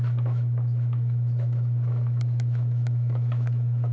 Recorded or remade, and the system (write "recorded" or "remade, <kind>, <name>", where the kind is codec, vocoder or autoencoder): remade, autoencoder, DAC-VAE